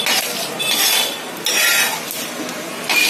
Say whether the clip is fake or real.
real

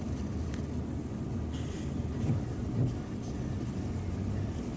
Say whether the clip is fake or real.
real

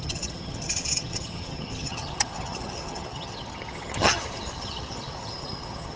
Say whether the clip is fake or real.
fake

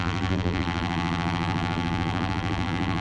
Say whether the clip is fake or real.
fake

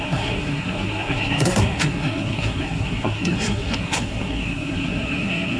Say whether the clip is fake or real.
fake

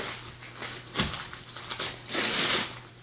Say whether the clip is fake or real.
real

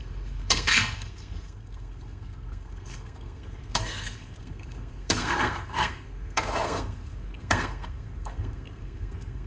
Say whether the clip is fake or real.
fake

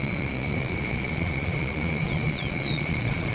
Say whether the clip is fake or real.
fake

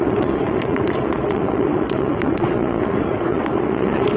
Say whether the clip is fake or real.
fake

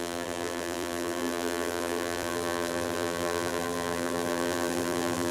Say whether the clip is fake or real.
fake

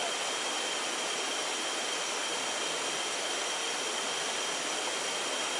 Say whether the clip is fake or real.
fake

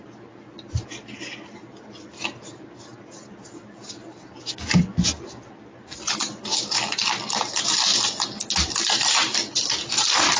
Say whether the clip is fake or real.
real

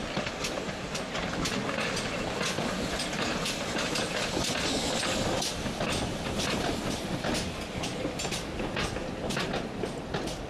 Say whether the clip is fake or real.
real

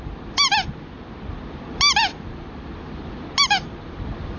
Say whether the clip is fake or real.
real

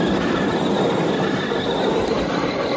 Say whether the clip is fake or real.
real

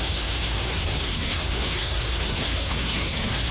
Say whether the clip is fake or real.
fake